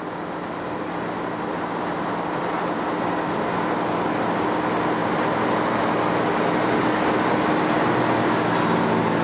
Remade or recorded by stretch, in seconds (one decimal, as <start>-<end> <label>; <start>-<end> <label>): 0.0-9.2 recorded